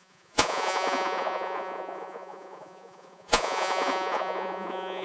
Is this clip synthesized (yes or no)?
yes